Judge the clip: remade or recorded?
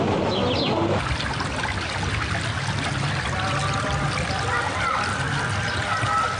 recorded